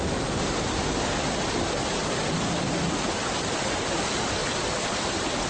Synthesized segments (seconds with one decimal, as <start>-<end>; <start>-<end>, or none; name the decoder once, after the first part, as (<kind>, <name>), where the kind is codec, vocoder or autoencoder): 2.0-2.5 (vocoder, BigVGAN v2); 4.4-5.1